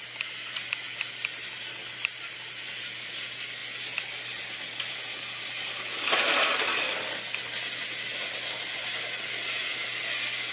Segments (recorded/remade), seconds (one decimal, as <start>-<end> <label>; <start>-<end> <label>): 0.0-10.5 recorded